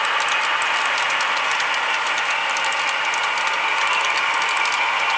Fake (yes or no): no